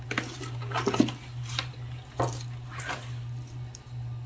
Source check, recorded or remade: recorded